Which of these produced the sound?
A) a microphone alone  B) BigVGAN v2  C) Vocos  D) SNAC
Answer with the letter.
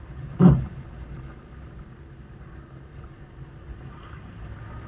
B